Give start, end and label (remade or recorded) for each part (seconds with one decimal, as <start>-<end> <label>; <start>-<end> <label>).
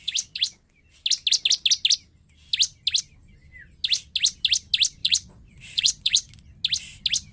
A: 0.0-5.0 recorded; 5.0-6.3 remade; 6.3-7.3 recorded